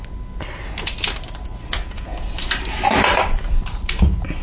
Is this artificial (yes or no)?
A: no